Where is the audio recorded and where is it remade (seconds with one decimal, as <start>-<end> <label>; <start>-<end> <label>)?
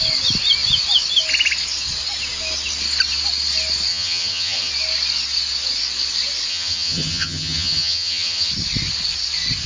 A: 0.0-3.9 recorded; 3.9-4.7 remade; 4.7-6.5 recorded; 6.5-8.5 remade; 8.5-9.7 recorded